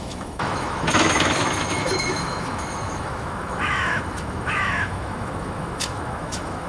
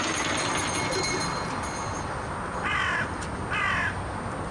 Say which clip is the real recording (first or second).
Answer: second